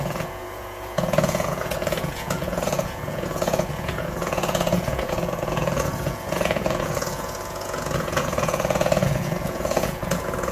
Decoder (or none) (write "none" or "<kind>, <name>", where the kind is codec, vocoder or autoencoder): vocoder, Vocos